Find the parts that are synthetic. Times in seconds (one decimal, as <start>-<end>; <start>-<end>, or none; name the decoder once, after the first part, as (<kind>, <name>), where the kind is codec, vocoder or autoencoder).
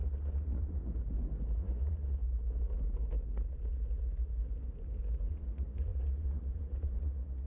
0.0-0.8 (vocoder, Vocos); 1.6-2.2; 5.3-7.5